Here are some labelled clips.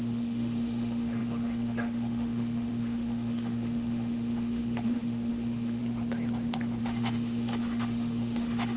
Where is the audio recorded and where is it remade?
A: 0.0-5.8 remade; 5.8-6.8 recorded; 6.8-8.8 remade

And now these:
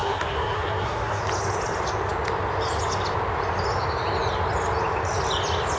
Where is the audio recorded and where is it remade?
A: 0.0-1.2 remade; 1.2-5.8 recorded

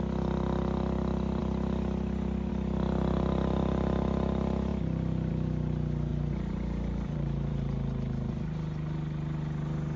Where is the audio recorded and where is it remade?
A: 0.0-6.1 recorded; 6.1-8.3 remade; 8.3-10.0 recorded

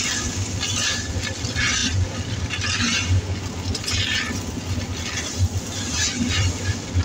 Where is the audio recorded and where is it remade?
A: 0.0-7.0 recorded

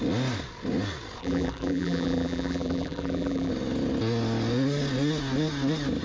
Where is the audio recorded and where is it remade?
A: 0.0-1.2 recorded; 1.2-3.5 remade; 3.5-6.0 recorded

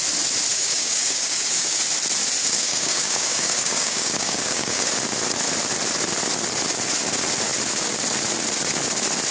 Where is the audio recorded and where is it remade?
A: 0.0-0.5 recorded; 0.5-1.8 remade; 1.8-2.4 recorded; 2.4-4.9 remade; 4.9-9.3 recorded